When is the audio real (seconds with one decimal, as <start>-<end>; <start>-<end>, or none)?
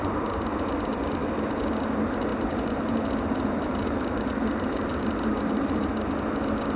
0.0-2.3; 5.8-6.8